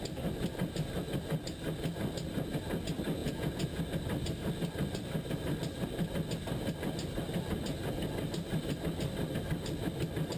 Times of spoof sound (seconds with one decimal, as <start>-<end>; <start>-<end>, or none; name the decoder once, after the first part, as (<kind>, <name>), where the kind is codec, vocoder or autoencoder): 3.2-3.8 (vocoder, Vocos)